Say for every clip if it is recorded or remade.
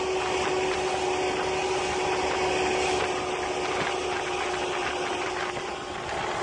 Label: recorded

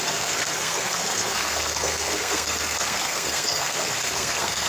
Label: remade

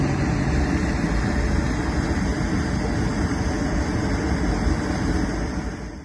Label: recorded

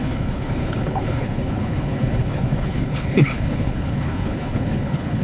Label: remade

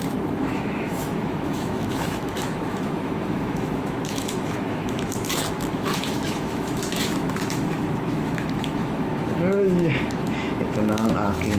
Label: remade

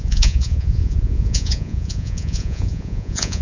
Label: remade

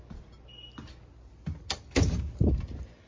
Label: recorded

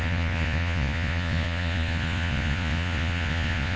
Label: remade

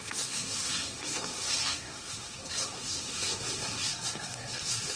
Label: remade